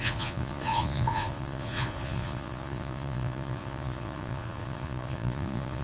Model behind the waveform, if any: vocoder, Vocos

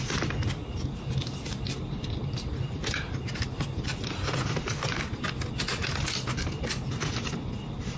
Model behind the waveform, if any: none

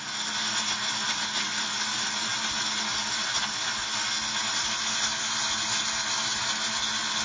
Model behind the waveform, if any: none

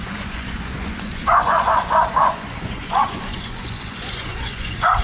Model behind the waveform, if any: vocoder, Vocos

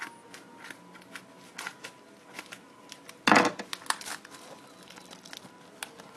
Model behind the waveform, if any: none